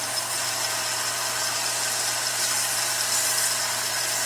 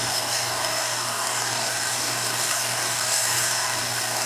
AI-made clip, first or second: second